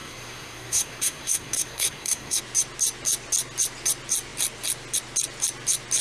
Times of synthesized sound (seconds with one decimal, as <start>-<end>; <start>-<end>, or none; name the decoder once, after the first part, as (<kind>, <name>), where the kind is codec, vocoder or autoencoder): 0.0-2.4 (codec, SNAC)